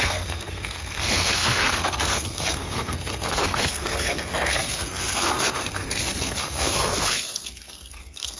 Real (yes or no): no